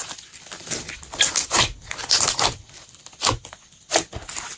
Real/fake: real